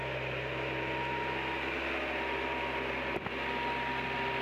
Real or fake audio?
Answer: real